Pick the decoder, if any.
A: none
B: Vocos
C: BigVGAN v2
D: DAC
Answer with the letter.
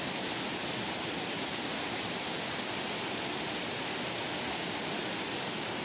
A